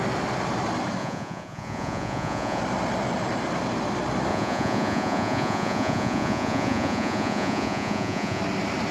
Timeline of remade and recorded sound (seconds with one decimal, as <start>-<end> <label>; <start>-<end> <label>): 0.0-1.0 recorded; 1.0-2.6 remade; 2.6-4.3 recorded; 4.3-8.4 remade; 8.4-8.9 recorded